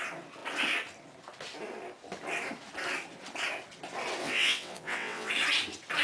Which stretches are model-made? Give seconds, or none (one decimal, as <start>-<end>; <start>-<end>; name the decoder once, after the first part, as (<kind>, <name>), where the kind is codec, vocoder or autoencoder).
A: 4.2-5.3 (vocoder, WaveNeXt)